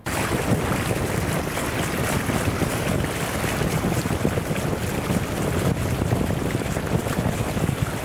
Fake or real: real